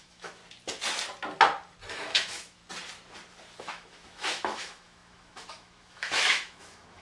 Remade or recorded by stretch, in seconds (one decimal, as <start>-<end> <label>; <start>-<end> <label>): 0.0-0.4 remade; 0.4-1.9 recorded; 1.9-2.6 remade; 2.6-3.6 recorded; 3.6-7.0 remade